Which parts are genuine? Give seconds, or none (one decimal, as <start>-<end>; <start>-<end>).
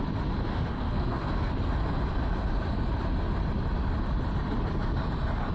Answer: 0.0-0.5; 1.5-5.5